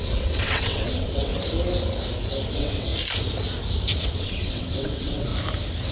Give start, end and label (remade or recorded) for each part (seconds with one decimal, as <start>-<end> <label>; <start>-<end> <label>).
0.0-1.3 remade; 1.3-2.5 recorded; 2.5-2.9 remade; 2.9-4.0 recorded; 4.0-5.3 remade; 5.3-5.9 recorded